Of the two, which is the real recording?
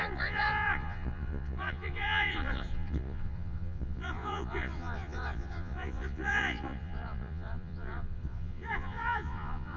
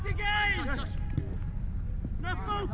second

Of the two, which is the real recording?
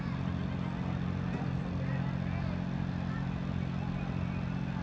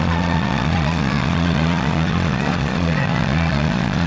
first